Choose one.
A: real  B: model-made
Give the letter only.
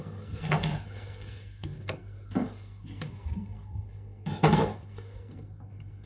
B